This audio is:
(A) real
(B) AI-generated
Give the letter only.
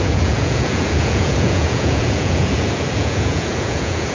B